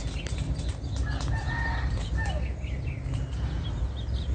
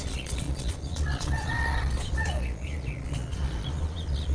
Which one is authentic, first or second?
first